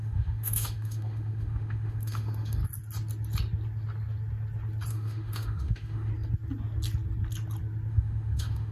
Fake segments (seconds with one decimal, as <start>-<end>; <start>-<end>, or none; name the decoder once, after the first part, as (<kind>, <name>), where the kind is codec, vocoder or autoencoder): 0.0-2.6 (autoencoder, DAC-VAE); 4.9-6.1; 7.9-8.7